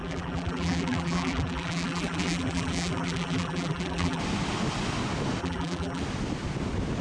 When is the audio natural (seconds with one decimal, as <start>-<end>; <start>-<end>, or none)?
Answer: 4.2-5.4; 6.0-7.0